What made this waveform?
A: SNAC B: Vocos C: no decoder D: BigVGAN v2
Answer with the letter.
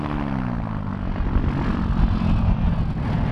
C